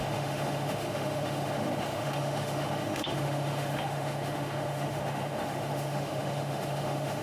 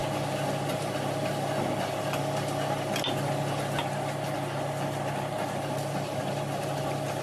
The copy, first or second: first